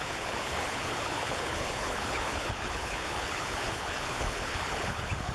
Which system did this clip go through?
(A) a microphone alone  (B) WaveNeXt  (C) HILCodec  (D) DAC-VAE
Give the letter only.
C